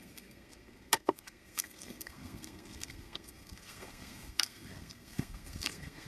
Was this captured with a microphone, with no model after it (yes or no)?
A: no